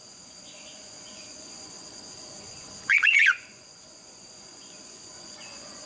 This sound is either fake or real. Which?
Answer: fake